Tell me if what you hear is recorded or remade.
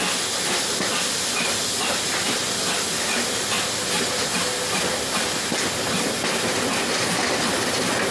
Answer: recorded